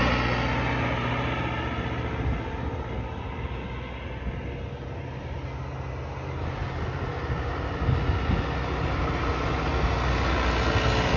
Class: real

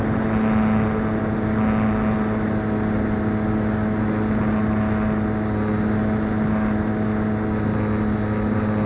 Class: real